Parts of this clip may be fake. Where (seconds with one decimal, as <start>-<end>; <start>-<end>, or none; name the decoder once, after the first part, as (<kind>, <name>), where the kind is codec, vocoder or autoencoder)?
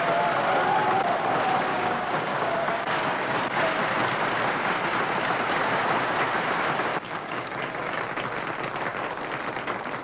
1.7-3.4 (codec, DAC); 6.9-8.0